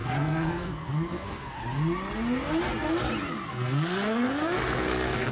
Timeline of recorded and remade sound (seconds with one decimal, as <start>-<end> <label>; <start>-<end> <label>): 0.0-1.6 remade; 1.6-3.5 recorded; 3.5-5.3 remade